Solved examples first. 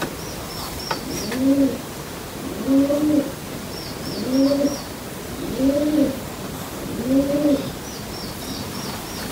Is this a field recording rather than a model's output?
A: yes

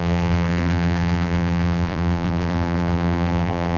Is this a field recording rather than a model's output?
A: no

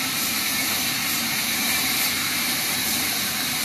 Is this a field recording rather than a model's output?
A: no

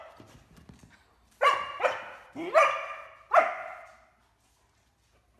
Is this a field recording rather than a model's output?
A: yes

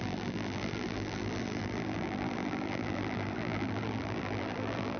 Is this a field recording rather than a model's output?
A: no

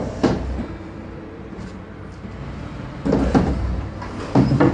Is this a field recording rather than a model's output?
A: no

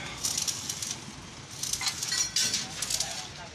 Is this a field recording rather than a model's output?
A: yes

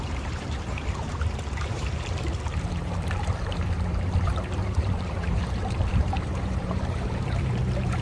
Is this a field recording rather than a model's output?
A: no